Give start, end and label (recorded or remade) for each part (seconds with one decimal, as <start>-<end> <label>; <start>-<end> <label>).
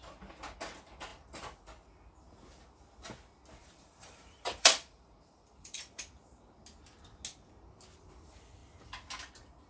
0.0-3.6 recorded; 3.6-6.0 remade; 6.0-9.7 recorded